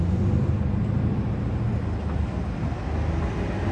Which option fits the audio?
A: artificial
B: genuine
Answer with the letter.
B